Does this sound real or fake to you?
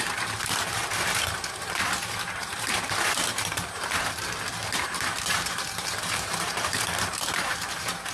fake